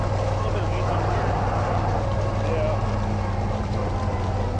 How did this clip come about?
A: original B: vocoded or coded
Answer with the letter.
A